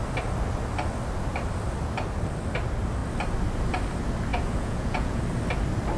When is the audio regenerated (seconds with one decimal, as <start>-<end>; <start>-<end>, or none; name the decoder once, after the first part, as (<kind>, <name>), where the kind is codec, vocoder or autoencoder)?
4.3-5.2 (vocoder, Vocos)